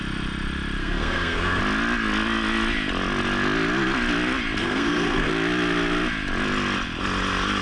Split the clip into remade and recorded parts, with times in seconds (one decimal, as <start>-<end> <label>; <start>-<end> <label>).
0.0-0.8 recorded; 0.8-1.6 remade; 1.6-4.6 recorded; 4.6-5.3 remade; 5.3-7.6 recorded